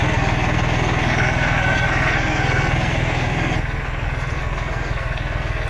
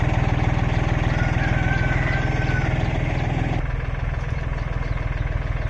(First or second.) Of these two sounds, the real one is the second